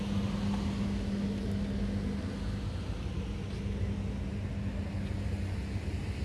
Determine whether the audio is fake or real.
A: real